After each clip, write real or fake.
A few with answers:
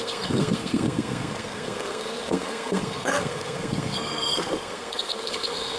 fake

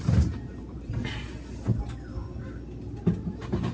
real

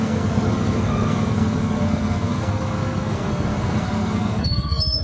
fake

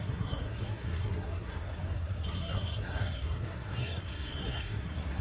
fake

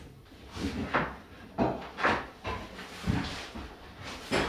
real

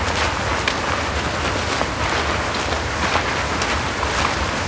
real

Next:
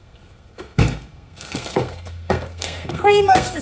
fake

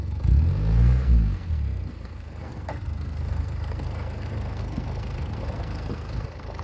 fake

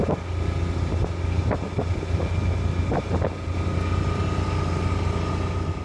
real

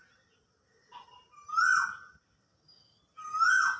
real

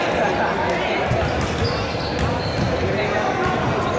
real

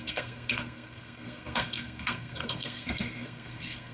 fake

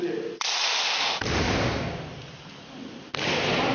real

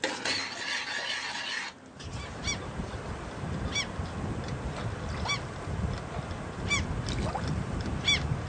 real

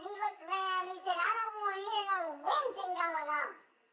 fake